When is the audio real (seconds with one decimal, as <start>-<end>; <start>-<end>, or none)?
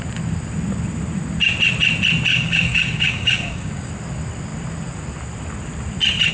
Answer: 0.0-2.3; 3.9-6.3